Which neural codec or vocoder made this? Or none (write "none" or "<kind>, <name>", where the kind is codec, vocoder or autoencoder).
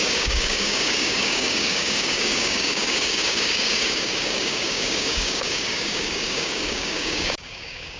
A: codec, DAC